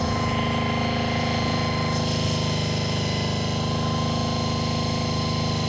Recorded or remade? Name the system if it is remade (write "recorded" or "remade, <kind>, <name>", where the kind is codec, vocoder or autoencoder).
recorded